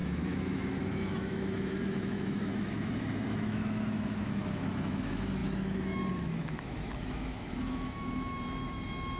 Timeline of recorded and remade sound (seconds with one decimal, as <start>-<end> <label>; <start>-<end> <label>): 0.0-9.2 remade